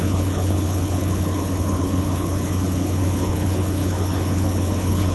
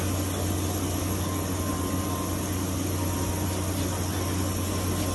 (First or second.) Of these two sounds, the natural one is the second